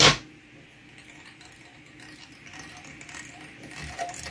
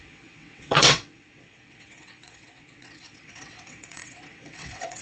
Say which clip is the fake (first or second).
second